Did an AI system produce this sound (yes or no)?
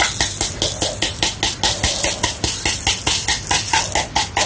no